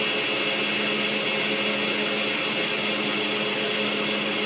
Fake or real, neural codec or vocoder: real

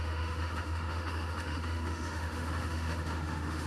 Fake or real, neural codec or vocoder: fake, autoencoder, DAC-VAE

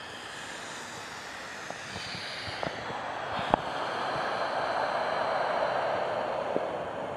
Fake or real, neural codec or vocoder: real